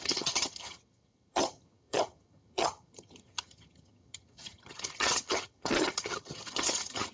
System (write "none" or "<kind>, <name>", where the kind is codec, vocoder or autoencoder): vocoder, HiFi-GAN